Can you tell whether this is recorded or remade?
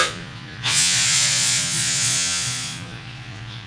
remade